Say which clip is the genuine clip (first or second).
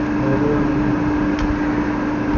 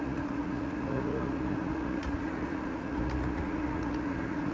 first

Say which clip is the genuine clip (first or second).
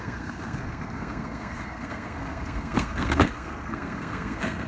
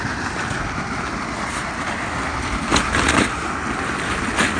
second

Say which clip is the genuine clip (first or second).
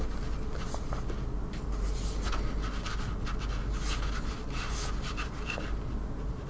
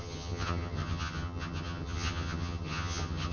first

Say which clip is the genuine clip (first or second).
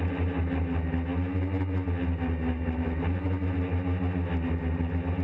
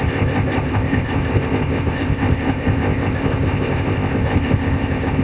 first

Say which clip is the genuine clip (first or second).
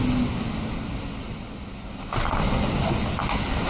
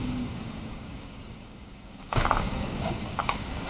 first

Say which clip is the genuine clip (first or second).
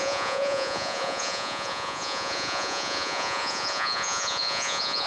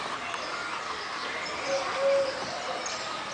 second